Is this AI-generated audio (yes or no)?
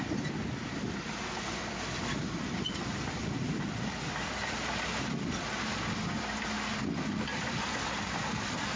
no